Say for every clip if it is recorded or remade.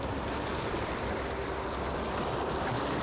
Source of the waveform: recorded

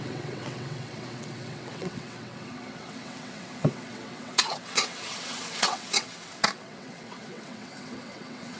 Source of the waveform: remade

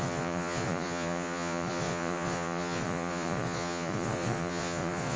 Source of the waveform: remade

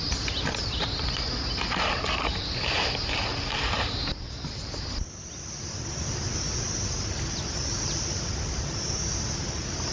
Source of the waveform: recorded